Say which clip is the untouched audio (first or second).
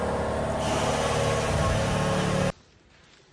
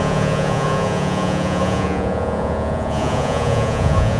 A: first